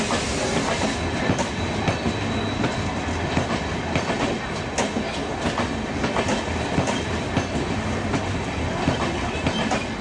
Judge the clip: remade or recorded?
recorded